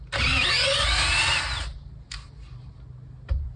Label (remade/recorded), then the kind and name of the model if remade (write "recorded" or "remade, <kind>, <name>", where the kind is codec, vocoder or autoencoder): recorded